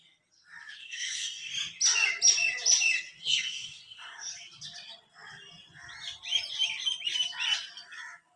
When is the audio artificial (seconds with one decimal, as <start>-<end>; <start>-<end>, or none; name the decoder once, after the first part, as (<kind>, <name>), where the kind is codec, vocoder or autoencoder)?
0.8-1.5 (codec, SNAC); 3.2-4.3